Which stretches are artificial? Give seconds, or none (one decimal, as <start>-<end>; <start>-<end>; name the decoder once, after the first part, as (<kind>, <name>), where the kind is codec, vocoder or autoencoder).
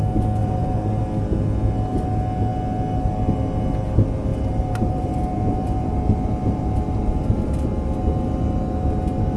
0.4-1.0 (vocoder, BigVGAN v2); 4.3-8.0